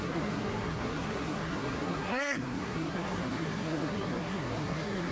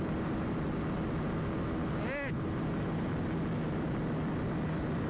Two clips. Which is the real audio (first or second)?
second